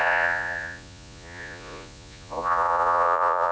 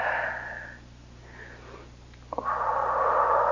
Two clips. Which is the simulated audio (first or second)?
first